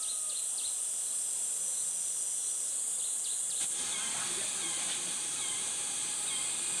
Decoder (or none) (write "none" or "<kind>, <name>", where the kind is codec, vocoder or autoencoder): vocoder, BigVGAN v2